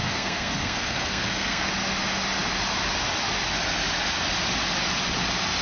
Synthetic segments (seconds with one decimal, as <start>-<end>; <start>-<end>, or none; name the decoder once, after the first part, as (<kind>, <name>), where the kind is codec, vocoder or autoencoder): 0.0-1.7 (codec, SNAC)